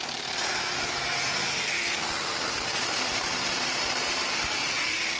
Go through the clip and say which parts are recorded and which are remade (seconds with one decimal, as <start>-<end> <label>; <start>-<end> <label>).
0.0-5.2 recorded